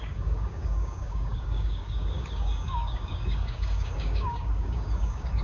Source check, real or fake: fake